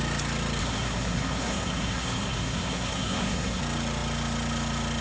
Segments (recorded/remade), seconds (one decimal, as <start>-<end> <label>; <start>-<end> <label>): 0.0-0.6 recorded; 0.6-3.6 remade; 3.6-5.0 recorded